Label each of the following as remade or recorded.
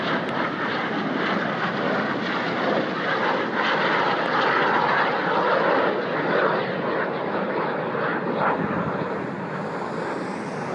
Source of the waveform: recorded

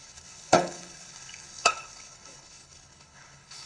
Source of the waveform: remade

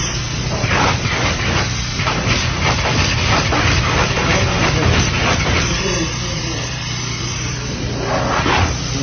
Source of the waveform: remade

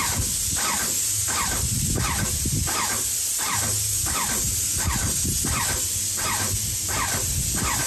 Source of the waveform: recorded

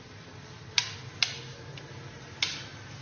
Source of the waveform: recorded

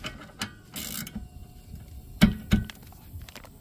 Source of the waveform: recorded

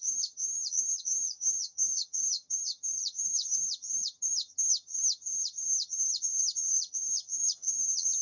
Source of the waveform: remade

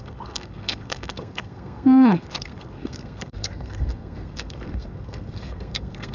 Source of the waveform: remade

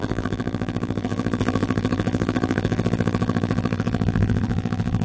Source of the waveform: remade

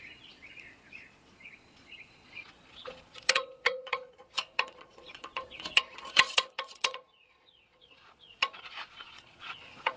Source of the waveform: remade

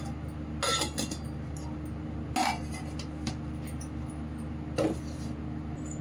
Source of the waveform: recorded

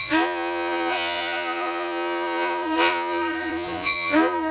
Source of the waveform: remade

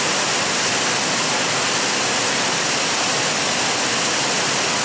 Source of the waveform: recorded